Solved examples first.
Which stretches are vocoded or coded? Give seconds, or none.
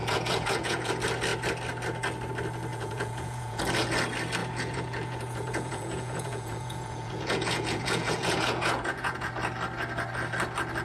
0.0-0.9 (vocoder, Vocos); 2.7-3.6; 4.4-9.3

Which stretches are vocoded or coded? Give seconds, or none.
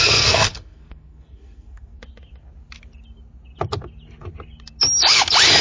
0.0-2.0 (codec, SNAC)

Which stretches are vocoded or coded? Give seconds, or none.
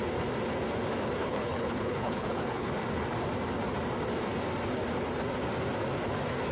1.2-2.7 (codec, HILCodec)